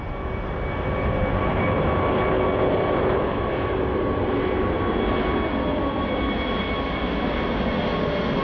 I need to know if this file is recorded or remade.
recorded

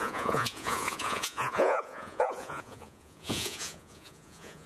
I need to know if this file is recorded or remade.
remade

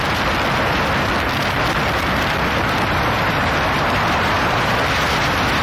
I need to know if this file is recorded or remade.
recorded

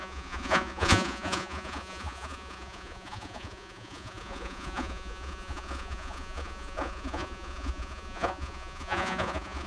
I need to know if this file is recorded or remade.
remade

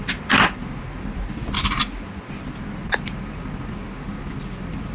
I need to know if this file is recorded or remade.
recorded